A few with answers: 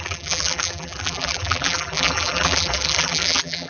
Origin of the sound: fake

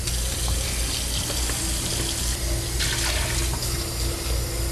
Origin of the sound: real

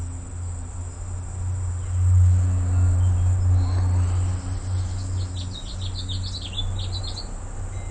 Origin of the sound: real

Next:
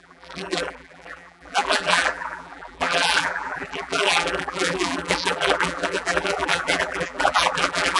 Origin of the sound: fake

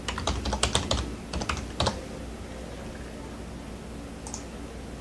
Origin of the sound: real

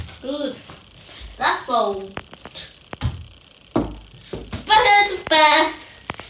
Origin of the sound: real